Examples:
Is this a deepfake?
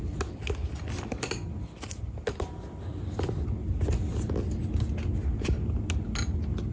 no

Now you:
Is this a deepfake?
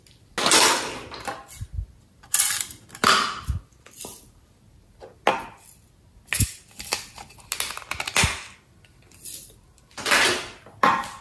no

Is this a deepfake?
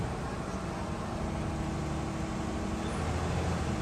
no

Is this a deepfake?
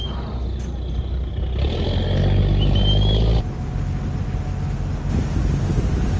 no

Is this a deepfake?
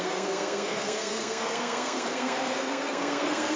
yes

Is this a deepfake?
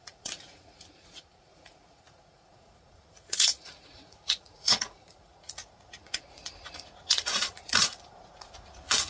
yes